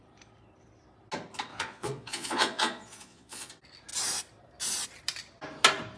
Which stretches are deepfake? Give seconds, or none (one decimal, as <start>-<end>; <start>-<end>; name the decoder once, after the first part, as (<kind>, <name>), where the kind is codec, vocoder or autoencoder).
1.5-3.5 (vocoder, Vocos)